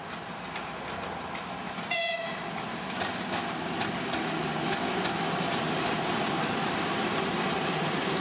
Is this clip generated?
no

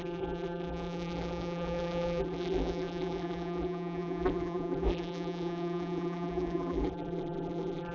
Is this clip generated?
yes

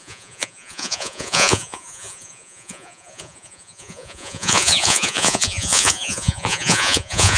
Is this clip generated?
yes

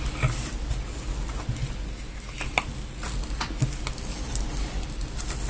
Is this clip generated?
no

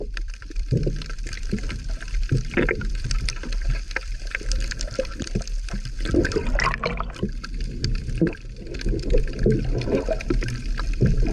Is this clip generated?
yes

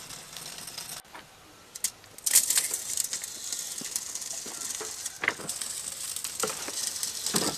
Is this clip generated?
no